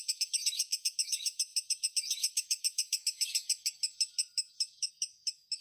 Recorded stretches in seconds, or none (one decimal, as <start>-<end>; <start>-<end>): none